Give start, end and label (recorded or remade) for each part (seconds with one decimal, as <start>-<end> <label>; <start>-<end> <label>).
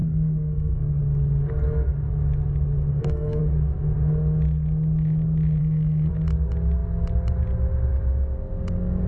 0.0-1.0 remade; 1.0-2.9 recorded; 2.9-3.4 remade; 3.4-5.6 recorded; 5.6-6.1 remade; 6.1-9.1 recorded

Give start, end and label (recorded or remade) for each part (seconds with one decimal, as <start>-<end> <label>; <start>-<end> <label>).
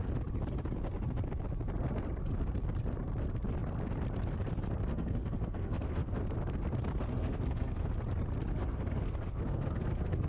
0.0-4.9 recorded; 4.9-6.2 remade; 6.2-7.1 recorded; 7.1-7.9 remade; 7.9-8.5 recorded; 8.5-10.3 remade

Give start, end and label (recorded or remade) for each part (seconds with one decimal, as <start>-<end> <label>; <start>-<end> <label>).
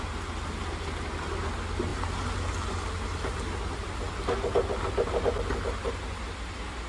0.0-6.9 recorded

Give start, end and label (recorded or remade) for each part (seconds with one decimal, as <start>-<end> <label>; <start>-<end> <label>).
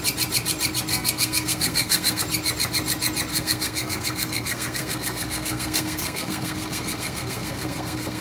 0.0-0.9 recorded; 0.9-2.2 remade; 2.2-3.3 recorded; 3.3-8.2 remade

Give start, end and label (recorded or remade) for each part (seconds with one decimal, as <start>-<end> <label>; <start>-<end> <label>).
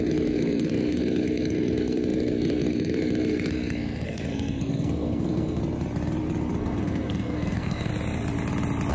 0.0-5.6 remade; 5.6-6.6 recorded; 6.6-7.9 remade; 7.9-8.9 recorded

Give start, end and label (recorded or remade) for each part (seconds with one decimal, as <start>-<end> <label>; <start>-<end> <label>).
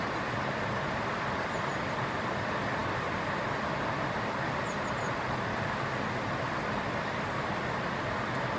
0.0-8.6 recorded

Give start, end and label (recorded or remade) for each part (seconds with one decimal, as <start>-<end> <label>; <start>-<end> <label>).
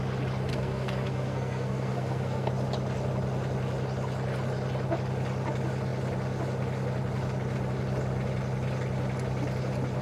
0.0-0.5 recorded; 0.5-2.5 remade; 2.5-10.0 recorded